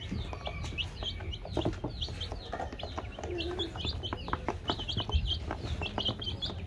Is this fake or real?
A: real